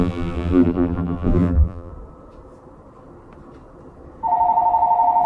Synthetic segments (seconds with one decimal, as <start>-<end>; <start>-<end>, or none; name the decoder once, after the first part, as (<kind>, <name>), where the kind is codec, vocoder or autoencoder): 0.0-1.9 (vocoder, BigVGAN v2)